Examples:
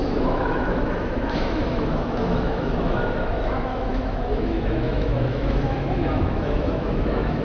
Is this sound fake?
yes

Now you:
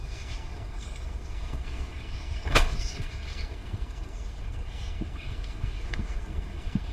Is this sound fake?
yes